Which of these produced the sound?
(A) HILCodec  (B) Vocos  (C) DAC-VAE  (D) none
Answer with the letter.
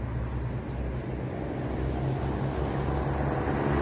D